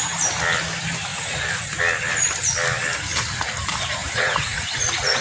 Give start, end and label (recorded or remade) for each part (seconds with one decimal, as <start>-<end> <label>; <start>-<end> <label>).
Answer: 0.0-1.1 recorded; 1.1-1.8 remade; 1.8-4.0 recorded; 4.0-5.2 remade